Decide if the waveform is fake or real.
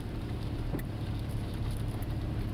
fake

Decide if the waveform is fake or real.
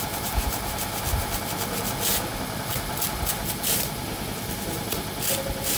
real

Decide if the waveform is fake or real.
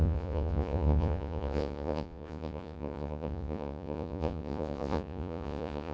fake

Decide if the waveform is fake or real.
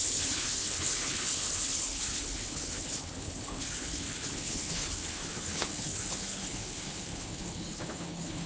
fake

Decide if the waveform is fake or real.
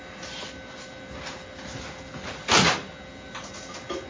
real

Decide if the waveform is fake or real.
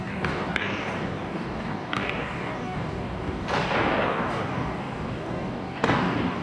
fake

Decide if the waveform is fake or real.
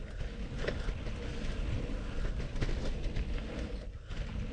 real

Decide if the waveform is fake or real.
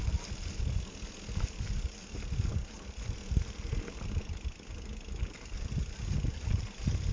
real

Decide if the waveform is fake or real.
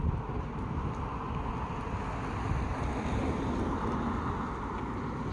real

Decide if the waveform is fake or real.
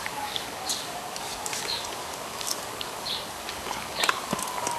fake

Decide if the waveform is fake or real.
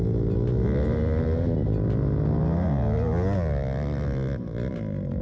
real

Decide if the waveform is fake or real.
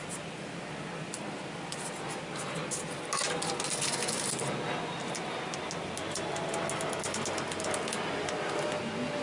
real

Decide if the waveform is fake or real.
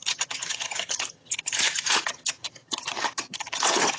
fake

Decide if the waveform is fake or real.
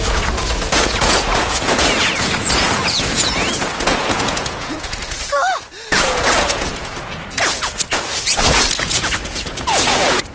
fake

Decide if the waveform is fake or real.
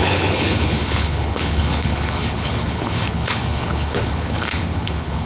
fake